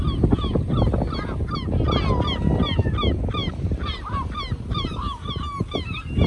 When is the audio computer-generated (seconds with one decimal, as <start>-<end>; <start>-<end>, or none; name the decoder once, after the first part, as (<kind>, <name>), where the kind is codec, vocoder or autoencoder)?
2.4-2.9 (vocoder, BigVGAN v2); 3.4-6.3